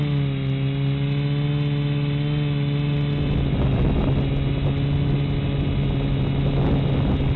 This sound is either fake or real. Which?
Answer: real